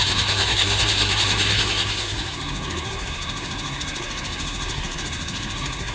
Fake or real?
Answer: fake